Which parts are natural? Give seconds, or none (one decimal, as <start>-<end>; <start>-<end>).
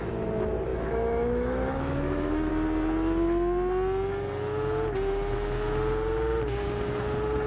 0.0-0.7; 2.5-7.5